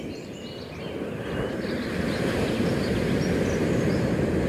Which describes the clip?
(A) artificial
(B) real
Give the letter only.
B